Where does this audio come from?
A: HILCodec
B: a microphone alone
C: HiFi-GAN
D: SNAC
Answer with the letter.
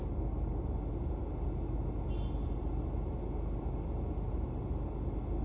B